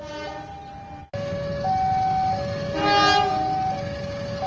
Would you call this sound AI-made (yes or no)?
no